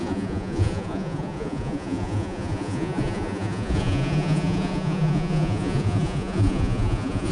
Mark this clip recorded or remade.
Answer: remade